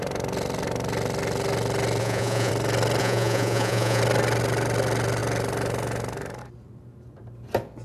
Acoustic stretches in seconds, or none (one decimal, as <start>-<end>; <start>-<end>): 0.0-2.0; 2.5-3.0; 4.0-7.8